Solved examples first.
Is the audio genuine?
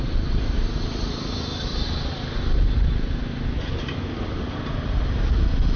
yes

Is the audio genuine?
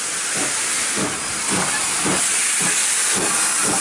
yes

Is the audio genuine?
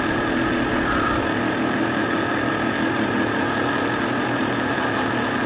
yes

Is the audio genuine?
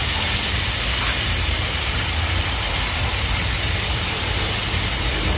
yes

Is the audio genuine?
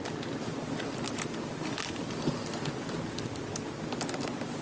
yes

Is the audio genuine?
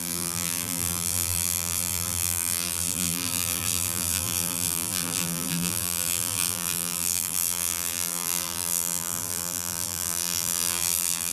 no